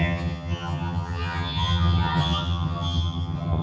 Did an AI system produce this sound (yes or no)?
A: yes